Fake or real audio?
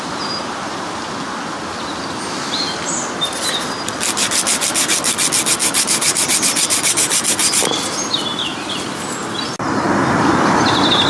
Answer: real